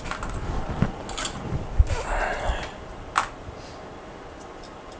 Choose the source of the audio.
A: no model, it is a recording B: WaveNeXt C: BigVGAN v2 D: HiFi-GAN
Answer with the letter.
A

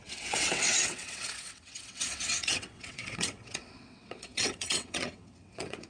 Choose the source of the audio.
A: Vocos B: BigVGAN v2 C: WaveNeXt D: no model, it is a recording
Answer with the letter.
C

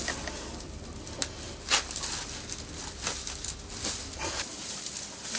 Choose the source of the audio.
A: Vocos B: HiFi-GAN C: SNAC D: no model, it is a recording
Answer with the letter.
D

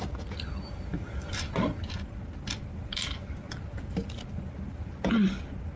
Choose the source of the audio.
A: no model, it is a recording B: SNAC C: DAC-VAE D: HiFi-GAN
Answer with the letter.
A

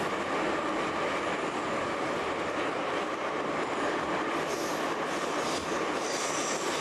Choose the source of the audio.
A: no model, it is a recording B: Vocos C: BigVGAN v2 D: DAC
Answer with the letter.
A